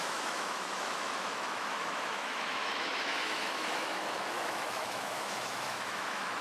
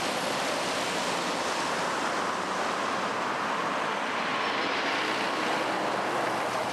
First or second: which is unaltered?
second